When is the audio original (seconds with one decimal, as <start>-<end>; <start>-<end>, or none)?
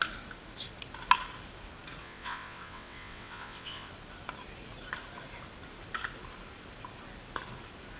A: 0.0-2.0; 3.9-8.0